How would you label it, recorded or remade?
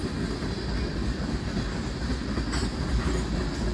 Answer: recorded